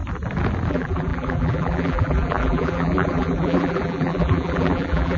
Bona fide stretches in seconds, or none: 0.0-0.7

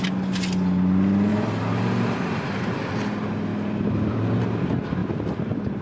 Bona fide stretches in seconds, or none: 0.0-1.3; 2.9-3.5; 4.4-5.8

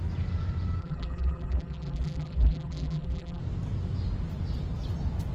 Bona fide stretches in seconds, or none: 0.0-0.8; 3.4-5.3

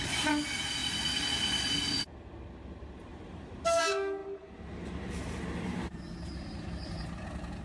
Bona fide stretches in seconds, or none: 0.0-3.1; 3.8-4.2; 6.0-7.6